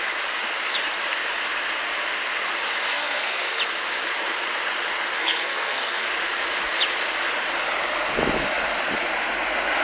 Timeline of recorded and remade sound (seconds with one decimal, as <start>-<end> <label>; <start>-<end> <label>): 0.0-2.9 recorded; 2.9-3.6 remade; 3.6-5.2 recorded; 5.2-6.1 remade; 6.1-9.8 recorded